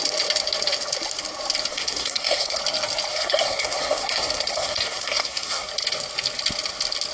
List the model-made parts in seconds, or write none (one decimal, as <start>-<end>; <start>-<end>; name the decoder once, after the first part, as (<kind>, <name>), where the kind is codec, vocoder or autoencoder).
1.7-2.6 (codec, SNAC); 3.1-5.7